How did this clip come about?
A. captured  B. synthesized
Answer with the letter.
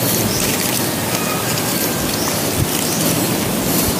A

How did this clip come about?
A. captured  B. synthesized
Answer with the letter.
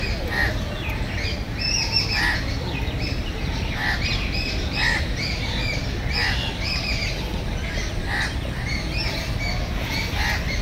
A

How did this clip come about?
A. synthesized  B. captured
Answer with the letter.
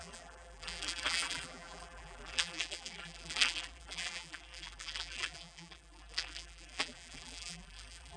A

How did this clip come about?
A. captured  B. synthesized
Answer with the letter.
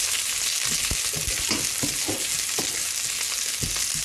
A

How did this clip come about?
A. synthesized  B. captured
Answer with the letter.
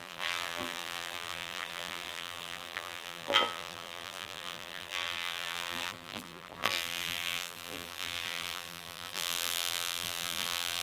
A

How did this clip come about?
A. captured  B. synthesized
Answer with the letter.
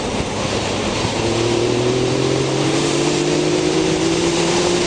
B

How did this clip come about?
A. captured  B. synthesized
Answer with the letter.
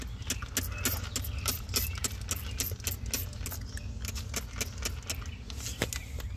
A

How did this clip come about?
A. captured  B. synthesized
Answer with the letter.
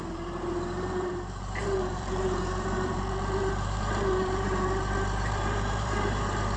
B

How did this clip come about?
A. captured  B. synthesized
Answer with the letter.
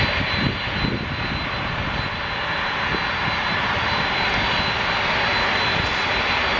A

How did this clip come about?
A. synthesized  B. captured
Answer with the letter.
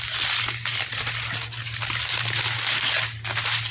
B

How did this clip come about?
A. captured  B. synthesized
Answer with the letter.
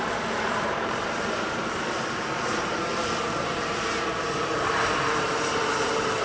B